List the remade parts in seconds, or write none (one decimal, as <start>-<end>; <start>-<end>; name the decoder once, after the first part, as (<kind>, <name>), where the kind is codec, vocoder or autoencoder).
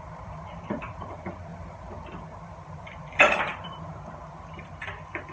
0.0-1.5 (vocoder, BigVGAN v2); 2.7-5.3